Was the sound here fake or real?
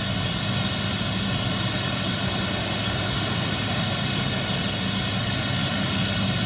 real